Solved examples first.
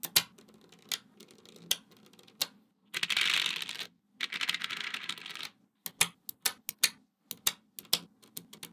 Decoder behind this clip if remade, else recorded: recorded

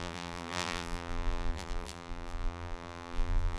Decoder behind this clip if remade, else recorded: remade, vocoder, BigVGAN v2